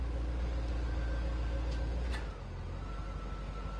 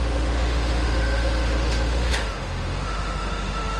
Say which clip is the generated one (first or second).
second